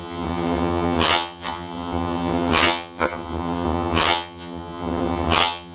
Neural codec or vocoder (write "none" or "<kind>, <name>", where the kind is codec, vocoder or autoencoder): vocoder, HiFi-GAN